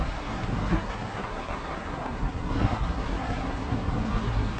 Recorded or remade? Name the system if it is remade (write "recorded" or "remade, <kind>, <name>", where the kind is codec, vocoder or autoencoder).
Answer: remade, codec, SNAC